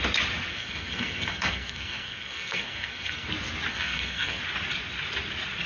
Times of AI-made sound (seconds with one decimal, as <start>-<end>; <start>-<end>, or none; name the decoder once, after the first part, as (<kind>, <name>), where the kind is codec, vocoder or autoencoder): 0.5-3.3 (codec, SNAC); 3.7-4.4